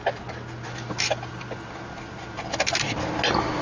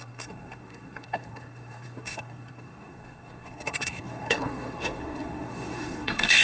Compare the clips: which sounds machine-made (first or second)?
second